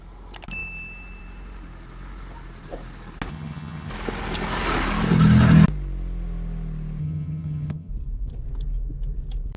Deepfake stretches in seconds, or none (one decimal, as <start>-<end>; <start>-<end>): 3.3-3.9; 7.0-7.9